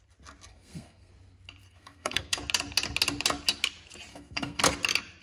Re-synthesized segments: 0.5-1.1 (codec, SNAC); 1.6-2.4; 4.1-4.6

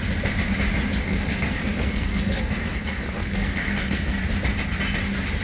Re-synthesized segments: 1.0-4.2 (codec, SNAC)

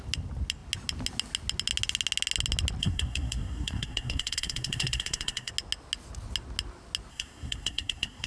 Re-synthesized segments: 2.8-5.5 (codec, SNAC); 7.1-8.3

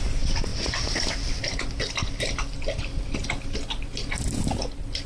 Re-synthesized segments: none

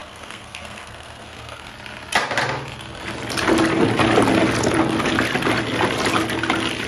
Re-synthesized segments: 0.0-1.7 (codec, SNAC)

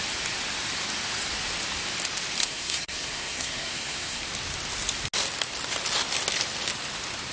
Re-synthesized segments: 2.4-4.2 (codec, SNAC)

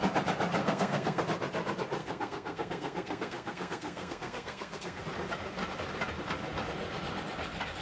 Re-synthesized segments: 0.6-1.2 (codec, SNAC); 2.0-5.0